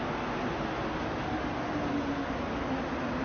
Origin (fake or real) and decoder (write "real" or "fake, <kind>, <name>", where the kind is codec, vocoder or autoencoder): real